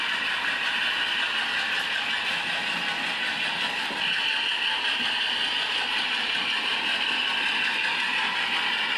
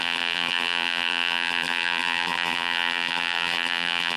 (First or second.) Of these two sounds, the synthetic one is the second